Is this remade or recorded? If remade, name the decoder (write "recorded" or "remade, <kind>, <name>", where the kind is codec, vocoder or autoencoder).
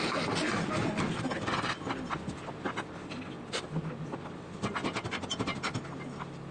recorded